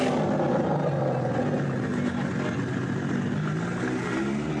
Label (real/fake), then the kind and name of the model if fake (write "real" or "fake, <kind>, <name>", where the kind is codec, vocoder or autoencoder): real